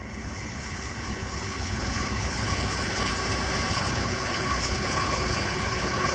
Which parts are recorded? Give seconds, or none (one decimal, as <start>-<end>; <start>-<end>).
3.1-3.7